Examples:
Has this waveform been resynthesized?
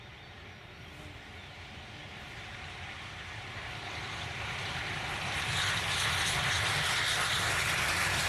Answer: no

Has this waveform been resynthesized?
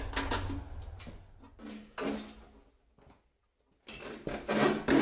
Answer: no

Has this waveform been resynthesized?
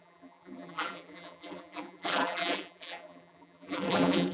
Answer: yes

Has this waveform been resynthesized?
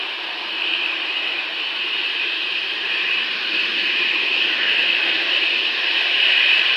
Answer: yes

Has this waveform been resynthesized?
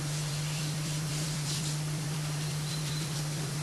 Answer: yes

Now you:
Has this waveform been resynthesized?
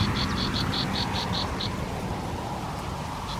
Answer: no